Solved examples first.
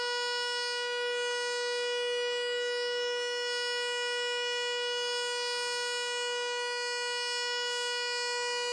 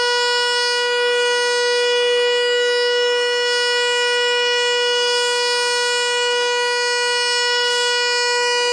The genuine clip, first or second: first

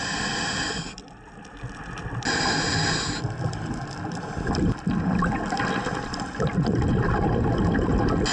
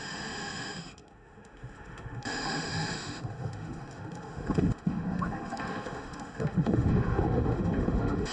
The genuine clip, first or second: first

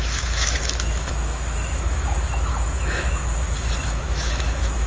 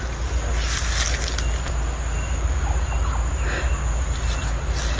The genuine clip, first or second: second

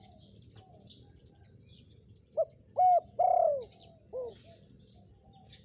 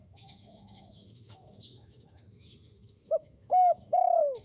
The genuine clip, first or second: first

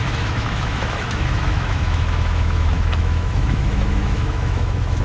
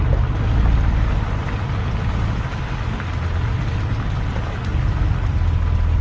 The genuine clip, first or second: second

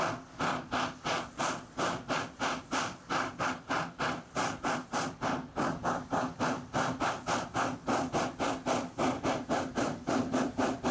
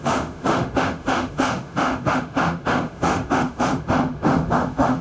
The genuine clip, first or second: first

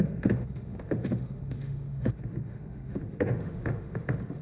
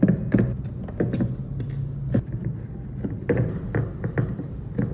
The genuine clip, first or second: second